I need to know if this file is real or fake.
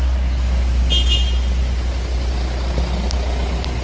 real